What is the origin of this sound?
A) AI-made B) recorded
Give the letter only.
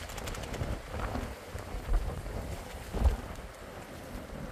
B